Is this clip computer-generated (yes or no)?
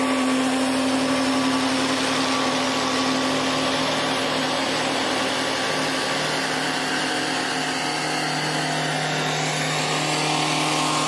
no